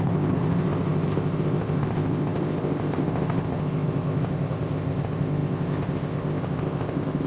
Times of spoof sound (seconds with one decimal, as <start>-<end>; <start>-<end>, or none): 0.0-7.3